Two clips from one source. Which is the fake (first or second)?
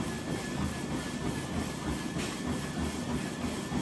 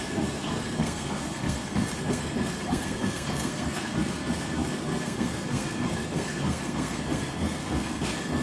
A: second